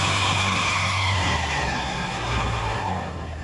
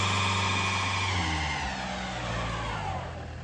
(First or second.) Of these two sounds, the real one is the second